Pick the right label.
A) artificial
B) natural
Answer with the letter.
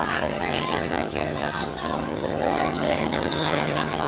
A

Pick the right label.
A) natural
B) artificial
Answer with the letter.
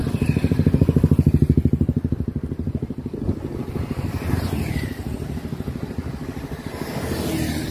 A